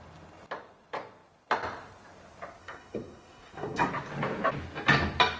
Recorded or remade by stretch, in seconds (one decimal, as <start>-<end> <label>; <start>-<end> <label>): 0.0-2.6 recorded; 2.6-3.9 remade; 3.9-5.4 recorded